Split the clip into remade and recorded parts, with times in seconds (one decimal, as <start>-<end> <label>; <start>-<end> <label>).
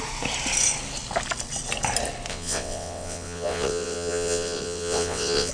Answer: 0.0-2.3 recorded; 2.3-5.5 remade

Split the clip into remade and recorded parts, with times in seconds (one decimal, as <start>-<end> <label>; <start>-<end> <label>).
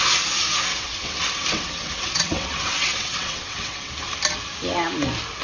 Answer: 0.0-0.7 recorded; 0.7-3.9 remade; 3.9-5.4 recorded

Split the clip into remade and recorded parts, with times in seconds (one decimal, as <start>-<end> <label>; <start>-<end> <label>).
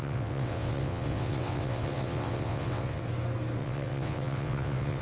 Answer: 0.0-3.0 remade; 3.0-3.6 recorded; 3.6-5.0 remade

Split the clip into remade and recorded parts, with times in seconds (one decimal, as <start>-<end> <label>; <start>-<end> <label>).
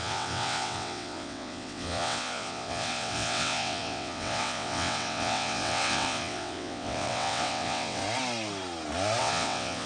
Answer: 0.0-8.0 remade; 8.0-9.2 recorded; 9.2-9.9 remade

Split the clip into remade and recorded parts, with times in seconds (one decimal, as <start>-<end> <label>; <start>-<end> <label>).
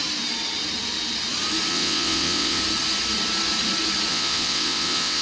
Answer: 0.0-1.7 recorded; 1.7-2.6 remade; 2.6-4.1 recorded; 4.1-5.2 remade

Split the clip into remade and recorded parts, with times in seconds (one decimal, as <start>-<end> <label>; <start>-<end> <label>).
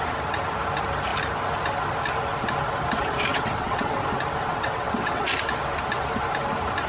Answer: 0.0-3.3 recorded; 3.3-4.0 remade; 4.0-4.5 recorded; 4.5-5.2 remade; 5.2-6.9 recorded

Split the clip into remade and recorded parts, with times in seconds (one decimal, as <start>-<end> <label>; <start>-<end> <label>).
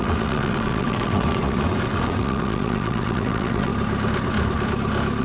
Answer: 0.0-3.7 remade; 3.7-5.2 recorded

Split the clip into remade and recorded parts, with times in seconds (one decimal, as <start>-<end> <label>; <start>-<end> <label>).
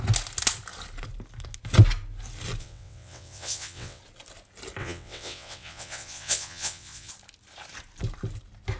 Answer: 0.0-2.6 recorded; 2.6-4.0 remade; 4.0-4.8 recorded; 4.8-7.1 remade; 7.1-8.8 recorded